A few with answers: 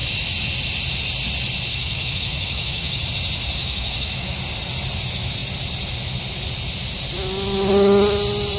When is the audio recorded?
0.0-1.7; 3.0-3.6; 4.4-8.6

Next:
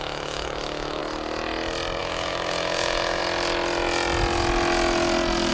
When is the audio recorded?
1.0-2.0; 3.2-5.5

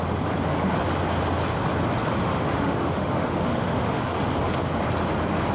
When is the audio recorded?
0.0-2.2; 4.2-5.5

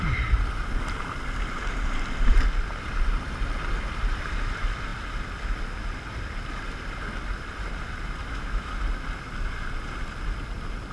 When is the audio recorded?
0.0-8.2; 8.7-10.9

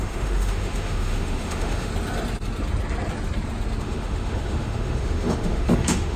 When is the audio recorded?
1.9-3.8

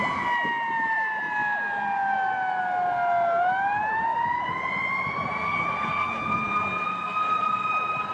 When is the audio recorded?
0.0-8.1